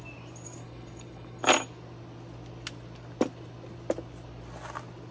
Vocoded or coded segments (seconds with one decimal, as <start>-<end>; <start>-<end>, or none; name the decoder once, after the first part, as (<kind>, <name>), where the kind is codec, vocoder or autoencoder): 0.6-1.4 (codec, HILCodec)